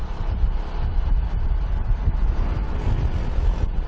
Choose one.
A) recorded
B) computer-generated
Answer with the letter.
A